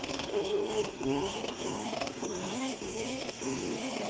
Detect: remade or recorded remade